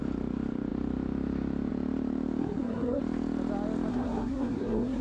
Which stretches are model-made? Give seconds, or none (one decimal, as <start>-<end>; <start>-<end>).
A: 2.4-3.0; 3.9-5.0